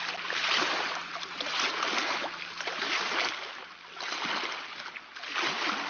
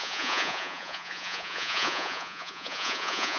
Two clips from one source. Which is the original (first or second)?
first